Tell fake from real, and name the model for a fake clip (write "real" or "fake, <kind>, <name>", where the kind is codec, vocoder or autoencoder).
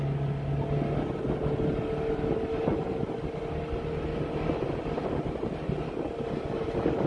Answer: real